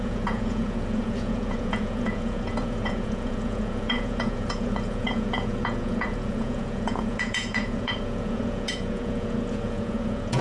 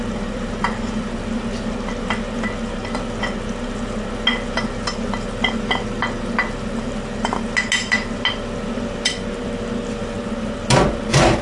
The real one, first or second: second